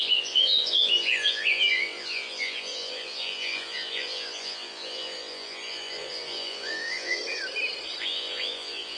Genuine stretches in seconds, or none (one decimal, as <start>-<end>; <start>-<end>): 7.2-8.0